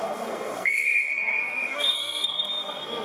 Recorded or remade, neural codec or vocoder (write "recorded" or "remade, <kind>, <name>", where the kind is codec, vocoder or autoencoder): remade, codec, SNAC